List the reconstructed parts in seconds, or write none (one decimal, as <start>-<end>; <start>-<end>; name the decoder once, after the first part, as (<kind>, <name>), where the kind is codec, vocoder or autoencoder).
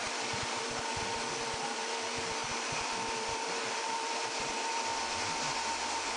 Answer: 0.0-4.9 (vocoder, BigVGAN v2)